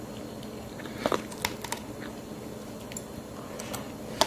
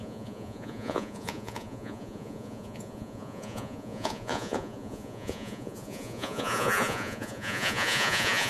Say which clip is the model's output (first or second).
second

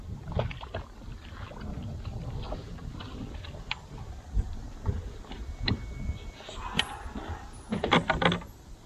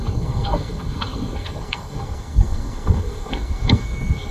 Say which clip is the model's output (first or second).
second